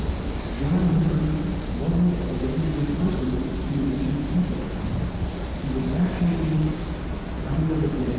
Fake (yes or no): no